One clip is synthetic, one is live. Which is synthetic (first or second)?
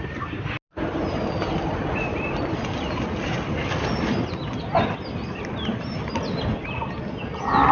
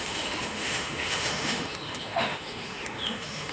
second